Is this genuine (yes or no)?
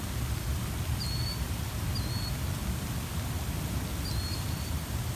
yes